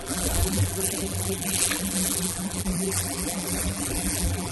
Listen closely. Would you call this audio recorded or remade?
remade